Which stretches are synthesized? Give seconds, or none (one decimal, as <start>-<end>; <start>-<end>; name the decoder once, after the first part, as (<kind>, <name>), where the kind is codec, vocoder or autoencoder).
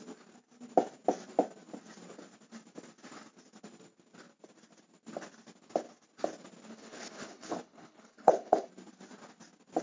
6.7-8.7 (codec, HILCodec)